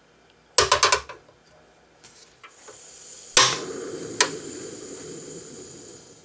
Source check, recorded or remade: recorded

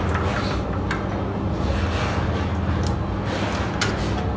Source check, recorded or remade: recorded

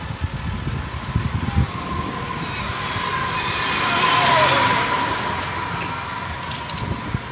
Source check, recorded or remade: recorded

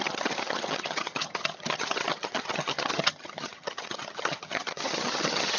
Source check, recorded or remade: remade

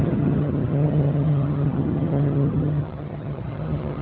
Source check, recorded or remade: remade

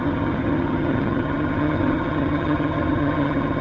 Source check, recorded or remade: remade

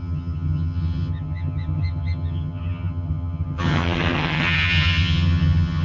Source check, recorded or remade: remade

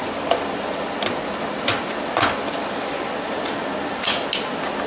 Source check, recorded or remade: recorded